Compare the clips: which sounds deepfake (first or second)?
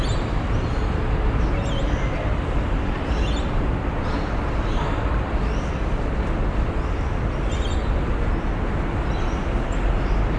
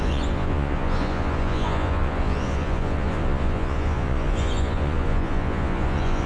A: second